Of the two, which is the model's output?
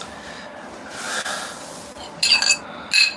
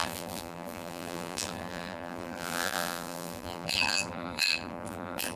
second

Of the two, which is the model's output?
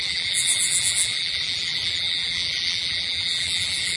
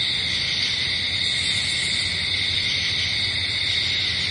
first